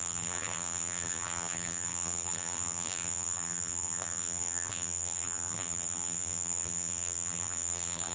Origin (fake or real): fake